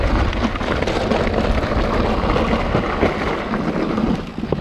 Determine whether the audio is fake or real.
real